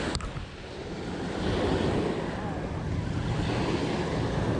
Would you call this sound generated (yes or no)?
no